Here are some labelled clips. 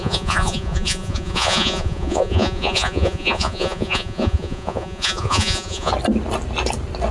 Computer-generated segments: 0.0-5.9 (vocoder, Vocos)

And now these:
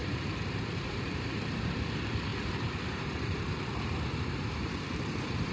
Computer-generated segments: 0.0-1.7 (vocoder, BigVGAN v2); 2.3-5.5

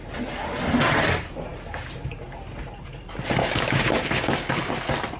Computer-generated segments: 3.4-4.7 (codec, DAC)